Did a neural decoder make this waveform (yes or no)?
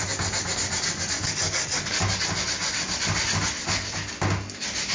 no